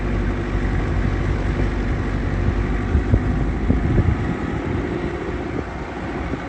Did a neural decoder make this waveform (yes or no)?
no